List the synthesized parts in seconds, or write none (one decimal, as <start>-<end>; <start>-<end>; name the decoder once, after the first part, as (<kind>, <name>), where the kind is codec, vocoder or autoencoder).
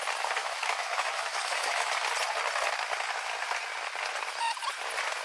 0.4-1.9 (autoencoder, DAC-VAE)